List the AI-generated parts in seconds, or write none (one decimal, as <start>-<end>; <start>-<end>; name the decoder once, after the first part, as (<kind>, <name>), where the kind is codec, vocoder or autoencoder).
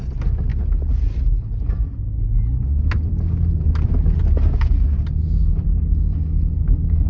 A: none